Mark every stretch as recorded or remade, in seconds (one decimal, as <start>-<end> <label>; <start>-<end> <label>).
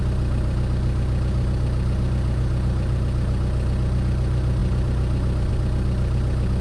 0.0-6.6 recorded